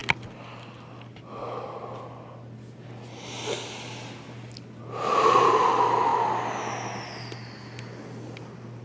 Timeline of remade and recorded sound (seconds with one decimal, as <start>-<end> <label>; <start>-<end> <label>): 0.0-8.8 recorded